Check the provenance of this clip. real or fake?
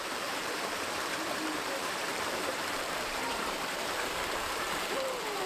fake